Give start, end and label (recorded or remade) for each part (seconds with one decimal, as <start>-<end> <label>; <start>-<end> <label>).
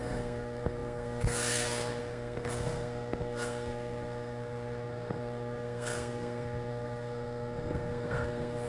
0.0-8.7 remade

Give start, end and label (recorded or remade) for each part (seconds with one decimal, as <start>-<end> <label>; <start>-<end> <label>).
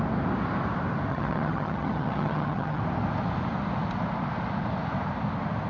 0.0-1.1 recorded; 1.1-2.8 remade; 2.8-5.7 recorded